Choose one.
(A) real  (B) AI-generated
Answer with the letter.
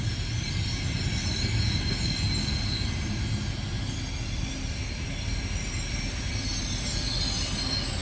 A